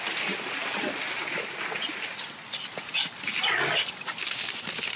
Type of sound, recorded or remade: recorded